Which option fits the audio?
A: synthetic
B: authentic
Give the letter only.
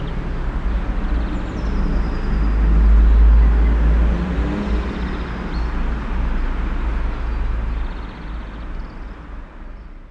B